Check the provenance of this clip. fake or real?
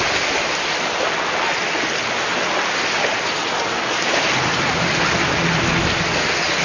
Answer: real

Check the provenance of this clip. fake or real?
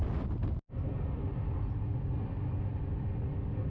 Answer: real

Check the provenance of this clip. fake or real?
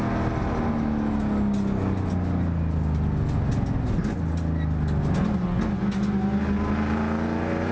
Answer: real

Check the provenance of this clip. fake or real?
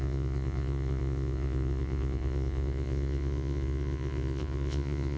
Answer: fake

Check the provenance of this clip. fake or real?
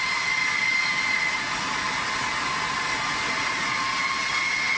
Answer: real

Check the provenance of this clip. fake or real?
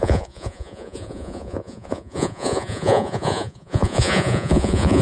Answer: fake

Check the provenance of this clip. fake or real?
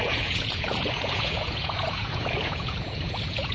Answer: fake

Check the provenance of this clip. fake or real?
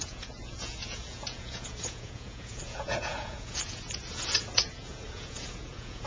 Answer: fake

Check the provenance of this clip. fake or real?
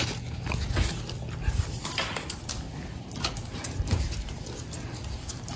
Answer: real